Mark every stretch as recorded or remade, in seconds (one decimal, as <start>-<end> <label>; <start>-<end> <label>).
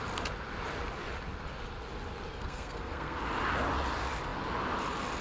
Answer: 0.0-2.3 recorded; 2.3-3.2 remade; 3.2-5.2 recorded